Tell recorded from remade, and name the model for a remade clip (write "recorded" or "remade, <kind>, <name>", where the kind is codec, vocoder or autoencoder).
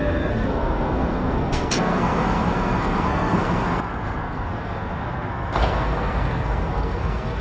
remade, codec, SNAC